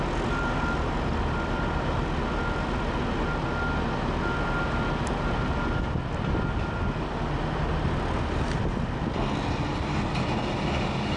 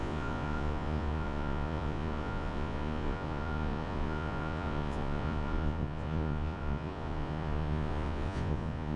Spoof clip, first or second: second